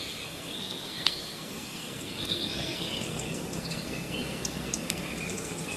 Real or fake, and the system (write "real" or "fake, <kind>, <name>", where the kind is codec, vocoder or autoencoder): fake, codec, SNAC